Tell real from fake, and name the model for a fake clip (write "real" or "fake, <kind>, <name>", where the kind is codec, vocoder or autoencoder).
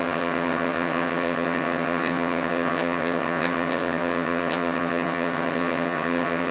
fake, vocoder, HiFi-GAN